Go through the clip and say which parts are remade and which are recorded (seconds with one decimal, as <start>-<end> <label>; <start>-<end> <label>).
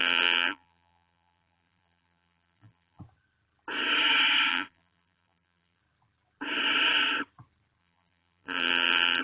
0.0-3.0 remade; 3.0-4.5 recorded; 4.5-5.8 remade; 5.8-7.8 recorded; 7.8-9.2 remade